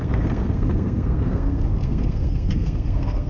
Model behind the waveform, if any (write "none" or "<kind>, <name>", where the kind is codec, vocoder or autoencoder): codec, SNAC